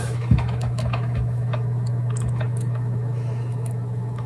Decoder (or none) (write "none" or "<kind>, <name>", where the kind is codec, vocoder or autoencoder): autoencoder, DAC-VAE